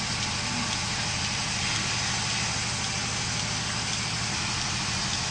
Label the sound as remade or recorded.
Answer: recorded